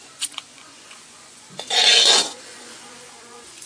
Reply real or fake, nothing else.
fake